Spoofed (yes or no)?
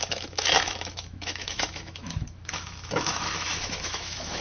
yes